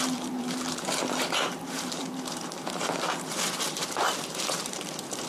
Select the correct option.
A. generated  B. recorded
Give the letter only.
A